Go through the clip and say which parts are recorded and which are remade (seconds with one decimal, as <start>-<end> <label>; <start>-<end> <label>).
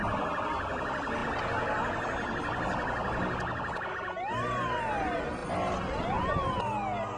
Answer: 0.0-7.2 recorded